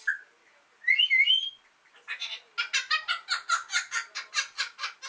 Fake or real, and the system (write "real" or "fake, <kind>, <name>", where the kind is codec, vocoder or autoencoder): real